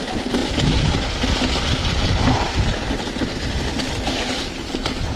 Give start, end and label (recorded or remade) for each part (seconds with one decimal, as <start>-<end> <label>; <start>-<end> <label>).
0.0-5.2 recorded